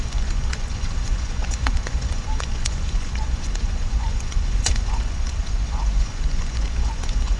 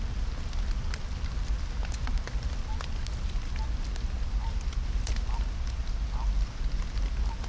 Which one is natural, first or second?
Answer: second